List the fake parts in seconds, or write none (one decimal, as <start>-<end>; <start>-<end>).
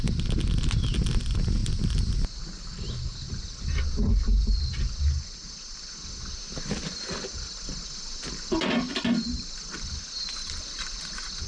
none